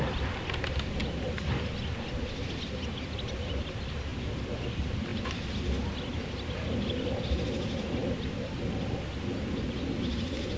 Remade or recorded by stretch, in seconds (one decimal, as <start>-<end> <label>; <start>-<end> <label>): 0.0-10.6 recorded

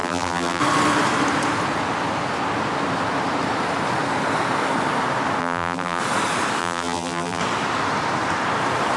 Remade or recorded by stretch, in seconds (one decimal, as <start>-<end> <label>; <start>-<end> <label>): 0.0-0.6 remade; 0.6-5.4 recorded; 5.4-6.0 remade; 6.0-6.6 recorded; 6.6-7.4 remade; 7.4-9.0 recorded

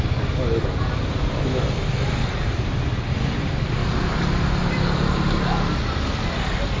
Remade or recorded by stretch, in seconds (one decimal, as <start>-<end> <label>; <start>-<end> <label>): 0.0-1.2 recorded; 1.2-3.0 remade; 3.0-3.8 recorded; 3.8-4.8 remade; 4.8-6.8 recorded

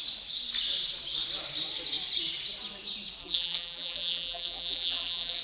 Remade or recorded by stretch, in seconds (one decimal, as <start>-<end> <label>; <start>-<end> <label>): 0.0-3.2 recorded; 3.2-5.4 remade